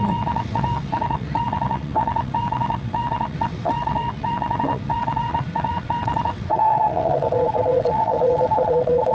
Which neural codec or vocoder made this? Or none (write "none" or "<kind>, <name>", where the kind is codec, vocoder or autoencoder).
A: vocoder, WaveNeXt